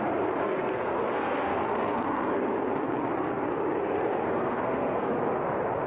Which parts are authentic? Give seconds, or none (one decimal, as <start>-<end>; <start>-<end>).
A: 0.0-0.4; 1.6-4.2; 5.1-5.9